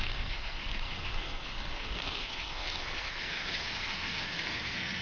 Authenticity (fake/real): fake